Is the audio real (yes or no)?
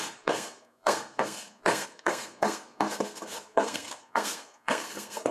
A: no